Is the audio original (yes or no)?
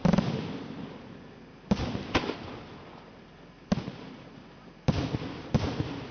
yes